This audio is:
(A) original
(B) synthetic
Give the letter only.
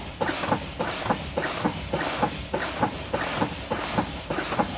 A